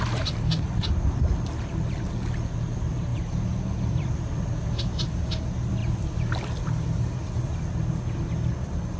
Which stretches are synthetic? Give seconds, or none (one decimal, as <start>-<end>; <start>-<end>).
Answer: none